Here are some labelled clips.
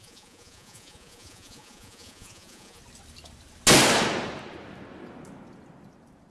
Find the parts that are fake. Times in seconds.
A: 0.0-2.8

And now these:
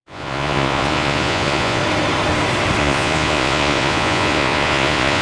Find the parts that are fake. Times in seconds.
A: 0.0-1.8; 2.8-5.2

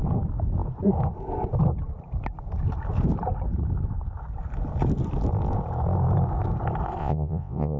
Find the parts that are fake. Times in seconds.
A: 7.0-7.8

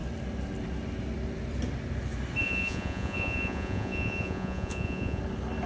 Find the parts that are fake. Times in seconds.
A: 2.4-5.2

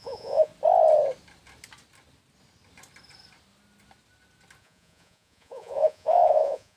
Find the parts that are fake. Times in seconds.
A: 0.0-0.5; 4.6-6.8

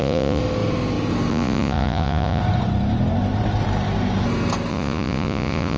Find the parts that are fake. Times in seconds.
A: 0.0-0.4; 1.3-2.4; 4.7-5.8